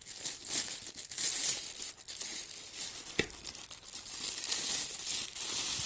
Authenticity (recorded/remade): recorded